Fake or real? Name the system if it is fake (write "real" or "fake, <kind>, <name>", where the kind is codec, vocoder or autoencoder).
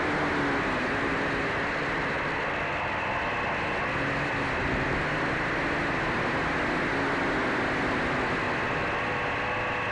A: real